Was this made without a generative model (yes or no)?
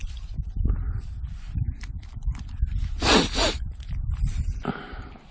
yes